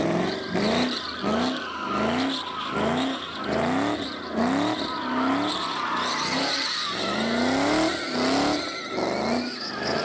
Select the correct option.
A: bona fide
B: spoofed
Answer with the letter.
A